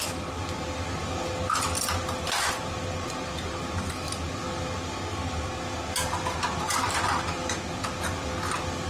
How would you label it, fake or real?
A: real